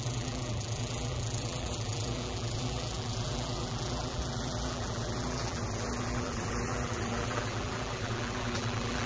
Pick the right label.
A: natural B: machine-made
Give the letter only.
B